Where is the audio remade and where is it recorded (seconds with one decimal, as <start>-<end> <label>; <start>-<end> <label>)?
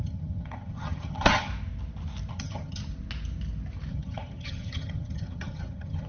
0.0-1.5 remade; 1.5-2.3 recorded; 2.3-2.8 remade; 2.8-3.9 recorded; 3.9-6.1 remade